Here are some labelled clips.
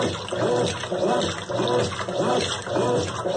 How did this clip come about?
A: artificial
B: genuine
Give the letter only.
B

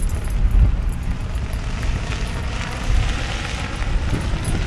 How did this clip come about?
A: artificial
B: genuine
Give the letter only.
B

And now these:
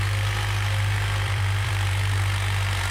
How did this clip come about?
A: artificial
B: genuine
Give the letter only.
A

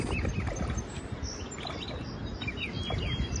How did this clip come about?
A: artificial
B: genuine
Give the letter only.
B